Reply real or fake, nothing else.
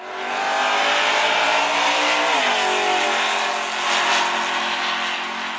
real